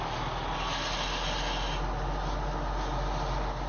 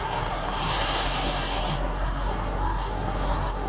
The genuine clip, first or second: first